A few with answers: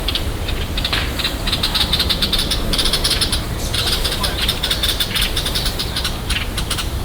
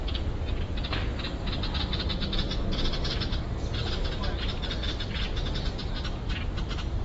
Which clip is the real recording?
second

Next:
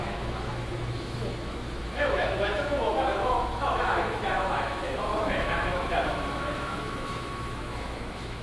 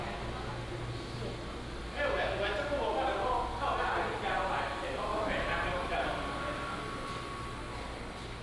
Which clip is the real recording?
second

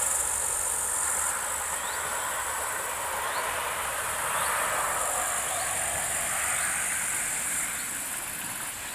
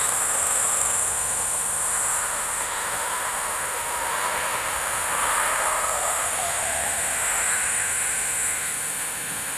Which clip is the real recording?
first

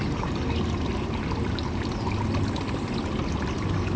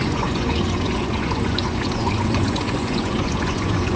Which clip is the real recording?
first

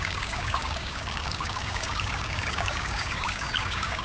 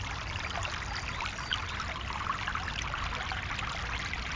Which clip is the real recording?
second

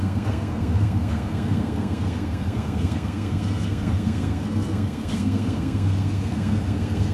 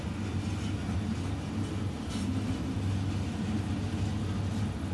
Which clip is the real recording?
second